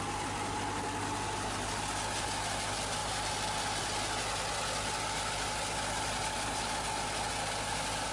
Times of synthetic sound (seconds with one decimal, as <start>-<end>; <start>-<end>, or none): none